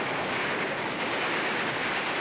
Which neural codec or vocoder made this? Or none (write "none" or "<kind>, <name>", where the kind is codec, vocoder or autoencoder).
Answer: codec, DAC